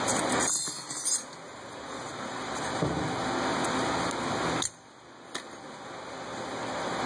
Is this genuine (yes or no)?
yes